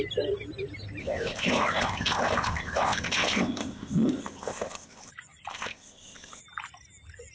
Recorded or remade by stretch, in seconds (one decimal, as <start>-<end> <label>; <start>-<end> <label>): 0.0-1.0 recorded; 1.0-5.1 remade; 5.1-5.5 recorded; 5.5-6.4 remade; 6.4-7.3 recorded